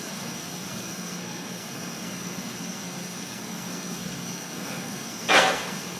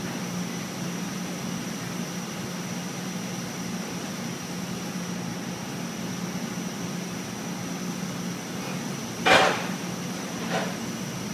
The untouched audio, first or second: second